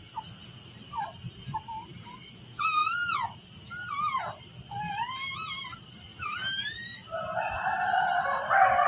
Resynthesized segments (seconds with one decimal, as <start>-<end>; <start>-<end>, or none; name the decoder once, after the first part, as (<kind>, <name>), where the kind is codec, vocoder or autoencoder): 6.1-6.7 (vocoder, BigVGAN v2)